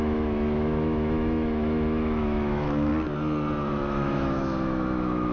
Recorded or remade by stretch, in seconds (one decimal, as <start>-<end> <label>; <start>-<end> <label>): 0.0-2.9 remade; 2.9-3.7 recorded; 3.7-5.3 remade

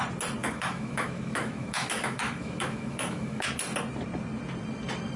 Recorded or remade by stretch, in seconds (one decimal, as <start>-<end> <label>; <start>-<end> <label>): 0.0-0.4 recorded; 0.4-3.5 remade; 3.5-5.2 recorded